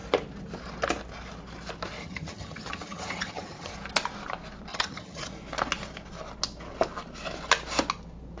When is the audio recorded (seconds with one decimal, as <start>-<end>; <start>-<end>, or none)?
0.0-2.0; 3.7-4.7; 5.2-8.4